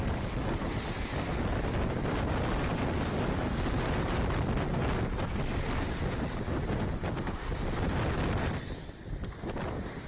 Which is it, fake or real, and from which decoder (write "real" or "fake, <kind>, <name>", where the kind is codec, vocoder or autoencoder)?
real